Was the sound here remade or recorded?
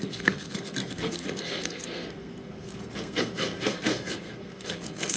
remade